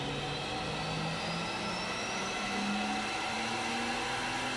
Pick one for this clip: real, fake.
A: real